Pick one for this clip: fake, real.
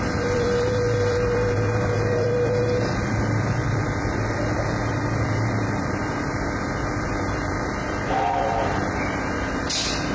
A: fake